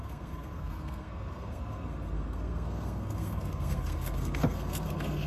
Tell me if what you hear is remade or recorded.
remade